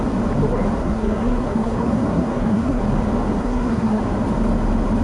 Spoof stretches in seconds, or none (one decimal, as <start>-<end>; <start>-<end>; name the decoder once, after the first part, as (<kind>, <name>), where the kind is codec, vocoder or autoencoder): 0.8-2.8 (codec, SNAC); 3.4-4.0